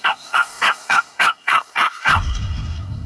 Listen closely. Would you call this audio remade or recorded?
remade